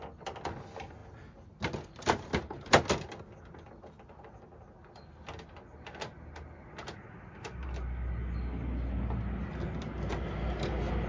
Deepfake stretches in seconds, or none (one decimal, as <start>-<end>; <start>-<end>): none